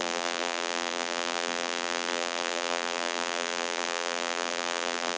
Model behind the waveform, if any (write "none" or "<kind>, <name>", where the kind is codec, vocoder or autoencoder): vocoder, BigVGAN v2